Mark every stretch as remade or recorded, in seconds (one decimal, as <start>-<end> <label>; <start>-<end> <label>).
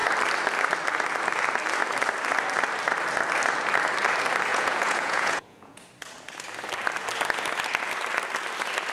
0.0-4.5 recorded; 4.5-5.8 remade; 5.8-8.9 recorded